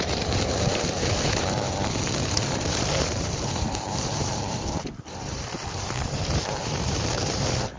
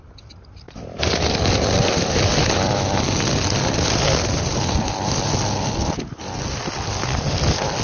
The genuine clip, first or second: second